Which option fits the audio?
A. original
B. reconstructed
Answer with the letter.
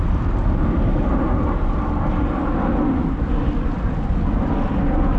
A